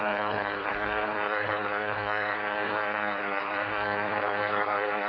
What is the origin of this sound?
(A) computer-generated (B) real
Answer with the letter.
A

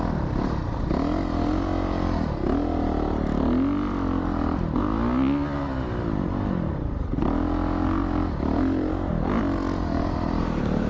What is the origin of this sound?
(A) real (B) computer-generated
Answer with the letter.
A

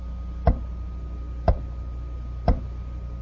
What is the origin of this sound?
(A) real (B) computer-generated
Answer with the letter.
A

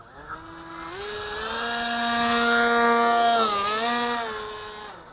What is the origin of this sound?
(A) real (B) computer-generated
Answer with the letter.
A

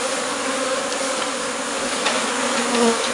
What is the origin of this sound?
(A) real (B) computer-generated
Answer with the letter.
B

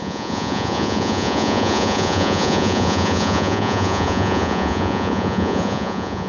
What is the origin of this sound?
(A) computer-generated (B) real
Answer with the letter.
A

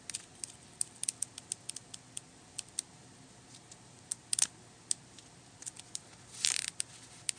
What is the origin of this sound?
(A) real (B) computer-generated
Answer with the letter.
A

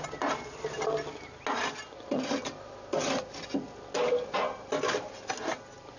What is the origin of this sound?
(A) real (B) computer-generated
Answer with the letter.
A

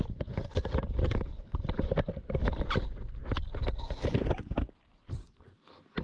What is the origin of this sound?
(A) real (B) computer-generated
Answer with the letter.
A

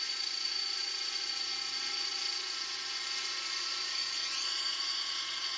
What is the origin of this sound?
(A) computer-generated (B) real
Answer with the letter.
A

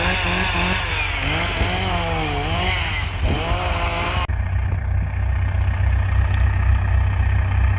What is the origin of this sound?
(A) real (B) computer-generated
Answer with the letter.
A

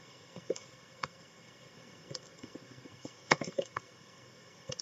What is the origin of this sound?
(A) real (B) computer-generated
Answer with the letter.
B